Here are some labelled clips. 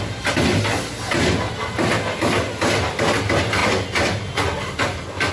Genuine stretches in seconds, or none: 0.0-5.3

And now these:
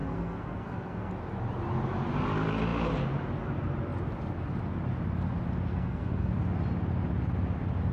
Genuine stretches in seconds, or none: 1.1-5.7; 6.3-7.9

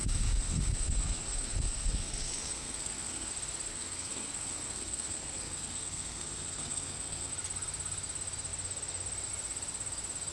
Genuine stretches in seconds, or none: 3.3-3.7; 7.3-10.3

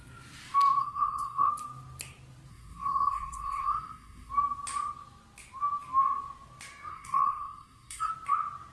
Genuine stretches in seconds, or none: 0.0-0.8; 1.5-2.5; 4.3-6.9; 8.1-8.7

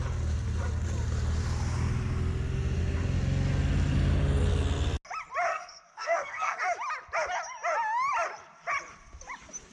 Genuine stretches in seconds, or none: 0.0-5.5; 6.6-9.7

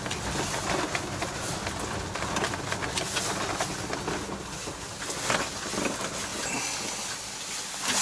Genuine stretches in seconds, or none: 0.0-8.0

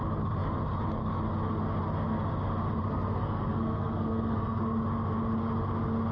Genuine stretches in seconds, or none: 0.0-2.8; 4.6-6.1

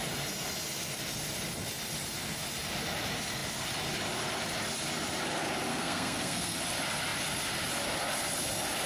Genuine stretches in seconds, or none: 0.0-5.7; 6.6-8.9